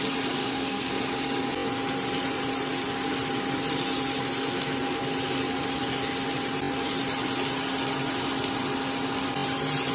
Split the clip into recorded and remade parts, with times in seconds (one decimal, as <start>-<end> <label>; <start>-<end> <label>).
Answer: 0.0-0.4 recorded; 0.4-0.9 remade; 0.9-9.9 recorded